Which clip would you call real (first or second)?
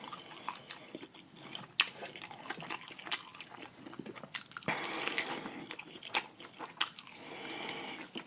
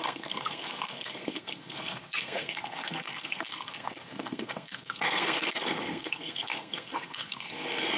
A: first